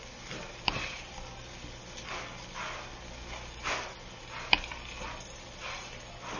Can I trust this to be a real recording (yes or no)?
yes